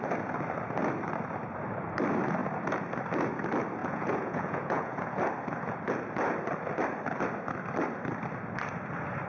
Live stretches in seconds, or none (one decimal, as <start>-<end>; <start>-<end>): 0.0-3.8; 5.2-9.3